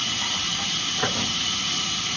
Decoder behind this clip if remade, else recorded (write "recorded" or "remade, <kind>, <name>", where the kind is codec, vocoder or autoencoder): recorded